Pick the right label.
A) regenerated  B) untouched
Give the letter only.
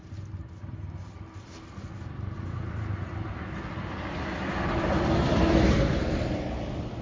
B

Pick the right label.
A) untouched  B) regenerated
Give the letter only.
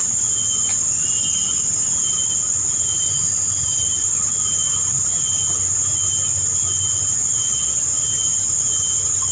A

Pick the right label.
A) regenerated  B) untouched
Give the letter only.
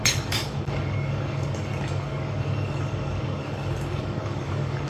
A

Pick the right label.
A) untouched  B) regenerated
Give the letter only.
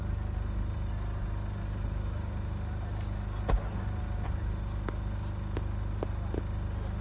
A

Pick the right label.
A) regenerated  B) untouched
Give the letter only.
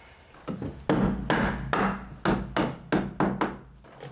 B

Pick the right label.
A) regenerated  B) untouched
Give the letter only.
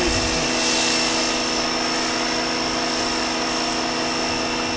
B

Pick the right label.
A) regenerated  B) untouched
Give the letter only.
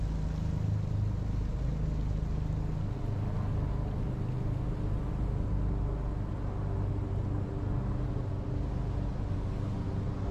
B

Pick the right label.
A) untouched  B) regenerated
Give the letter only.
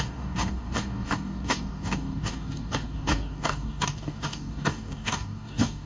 B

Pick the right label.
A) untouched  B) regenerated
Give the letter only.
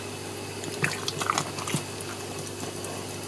A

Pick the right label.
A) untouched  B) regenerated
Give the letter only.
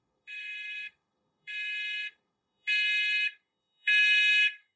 B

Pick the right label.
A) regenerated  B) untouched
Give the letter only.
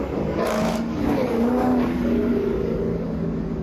A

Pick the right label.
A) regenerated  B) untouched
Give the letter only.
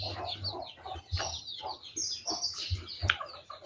B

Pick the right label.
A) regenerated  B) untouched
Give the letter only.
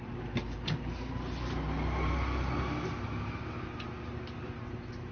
B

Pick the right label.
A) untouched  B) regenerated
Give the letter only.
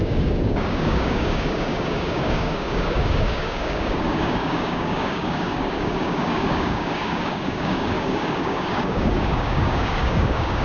B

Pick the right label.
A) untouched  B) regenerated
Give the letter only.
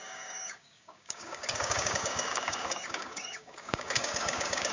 B